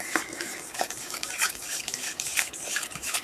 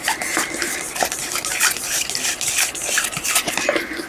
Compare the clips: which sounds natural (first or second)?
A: second